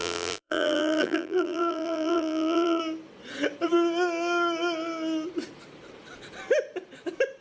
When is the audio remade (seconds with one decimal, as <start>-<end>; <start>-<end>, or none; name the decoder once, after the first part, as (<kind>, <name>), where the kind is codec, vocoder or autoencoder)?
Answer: 0.0-2.8 (vocoder, BigVGAN v2)